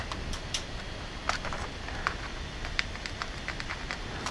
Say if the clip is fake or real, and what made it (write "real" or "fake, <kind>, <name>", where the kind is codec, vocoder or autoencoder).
real